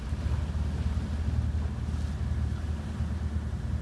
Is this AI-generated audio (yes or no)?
no